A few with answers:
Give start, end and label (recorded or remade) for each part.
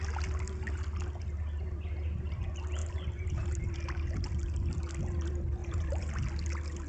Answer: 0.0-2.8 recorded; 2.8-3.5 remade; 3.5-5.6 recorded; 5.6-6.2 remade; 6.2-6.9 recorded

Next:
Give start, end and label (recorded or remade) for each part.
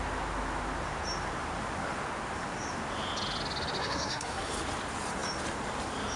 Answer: 0.0-3.8 recorded; 3.8-4.5 remade; 4.5-6.2 recorded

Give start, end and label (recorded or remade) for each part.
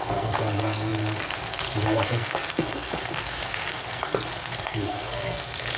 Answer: 0.0-5.8 remade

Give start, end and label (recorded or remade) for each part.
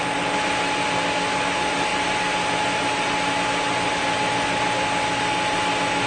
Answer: 0.0-6.1 recorded